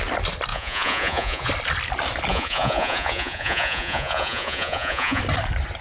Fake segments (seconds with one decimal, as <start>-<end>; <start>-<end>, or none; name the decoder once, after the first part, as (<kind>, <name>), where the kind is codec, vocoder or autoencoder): 0.5-1.5 (vocoder, Vocos); 2.3-5.2